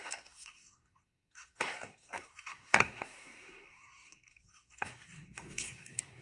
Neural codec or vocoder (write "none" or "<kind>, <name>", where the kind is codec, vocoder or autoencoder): codec, SNAC